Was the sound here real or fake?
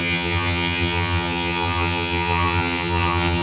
fake